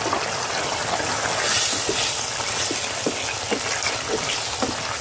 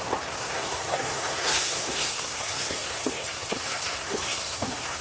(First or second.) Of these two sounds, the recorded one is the first